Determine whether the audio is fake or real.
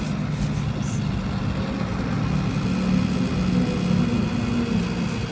real